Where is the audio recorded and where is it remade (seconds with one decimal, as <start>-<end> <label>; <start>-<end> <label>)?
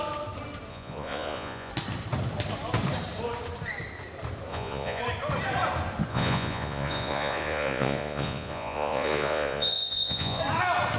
0.0-0.7 recorded; 0.7-1.7 remade; 1.7-4.5 recorded; 4.5-5.0 remade; 5.0-6.1 recorded; 6.1-10.4 remade; 10.4-11.0 recorded